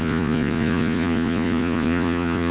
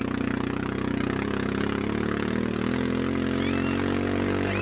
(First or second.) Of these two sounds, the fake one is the first